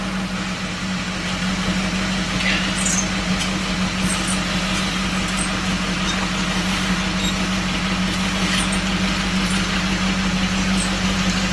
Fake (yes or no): no